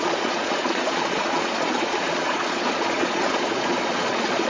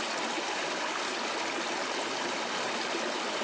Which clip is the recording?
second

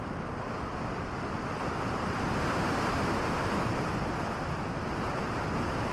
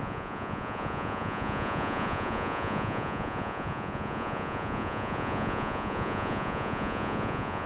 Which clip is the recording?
first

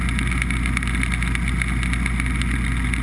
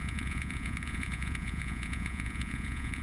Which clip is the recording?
first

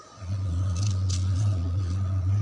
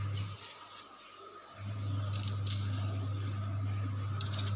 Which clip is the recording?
second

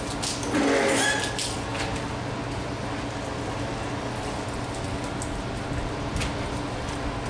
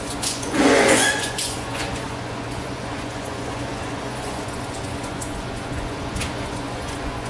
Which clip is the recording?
first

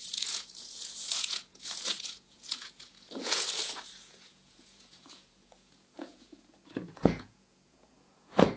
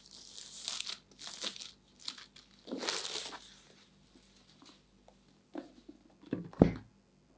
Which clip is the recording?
second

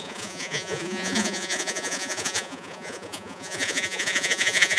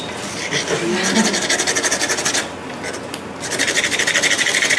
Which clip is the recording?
second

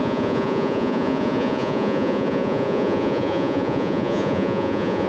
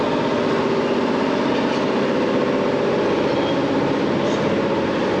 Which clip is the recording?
second